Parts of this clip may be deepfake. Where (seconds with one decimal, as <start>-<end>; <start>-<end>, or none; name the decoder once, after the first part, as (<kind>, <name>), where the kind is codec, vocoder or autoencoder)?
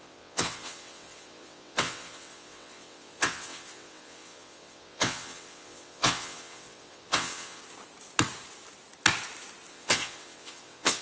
0.0-7.6 (vocoder, WaveNeXt); 9.7-11.0